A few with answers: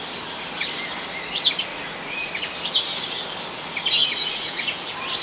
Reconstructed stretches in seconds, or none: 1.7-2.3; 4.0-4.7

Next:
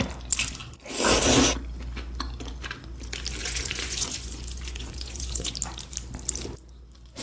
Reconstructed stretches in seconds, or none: 3.4-5.5

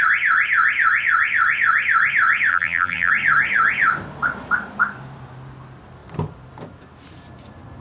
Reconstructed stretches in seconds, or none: 2.5-3.1